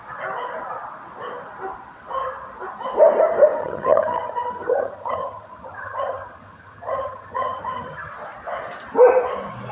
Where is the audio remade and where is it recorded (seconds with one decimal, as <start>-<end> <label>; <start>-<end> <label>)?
0.0-3.6 recorded; 3.6-8.1 remade; 8.1-9.7 recorded